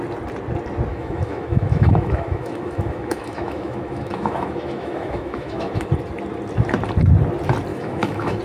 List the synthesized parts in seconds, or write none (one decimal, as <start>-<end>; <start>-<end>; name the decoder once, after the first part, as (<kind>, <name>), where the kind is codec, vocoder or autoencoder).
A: 0.9-5.9 (autoencoder, DAC-VAE); 7.7-8.4